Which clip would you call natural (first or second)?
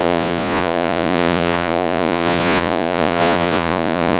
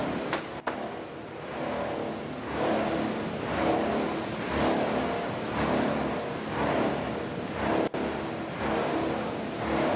second